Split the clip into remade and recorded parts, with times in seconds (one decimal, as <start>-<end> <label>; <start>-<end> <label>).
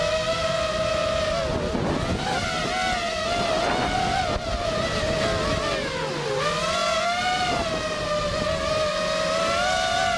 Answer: 0.0-10.2 recorded